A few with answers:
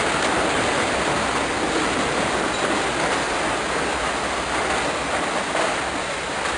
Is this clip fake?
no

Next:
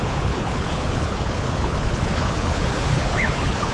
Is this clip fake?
yes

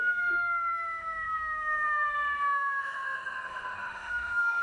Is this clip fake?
yes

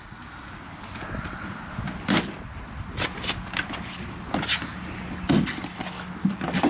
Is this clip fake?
no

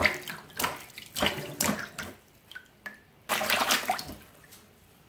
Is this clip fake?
no